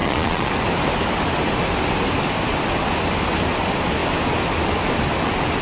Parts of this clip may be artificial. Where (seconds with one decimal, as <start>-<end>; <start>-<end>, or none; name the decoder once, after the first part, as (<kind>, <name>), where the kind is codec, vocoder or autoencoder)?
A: 0.0-0.5 (vocoder, Vocos)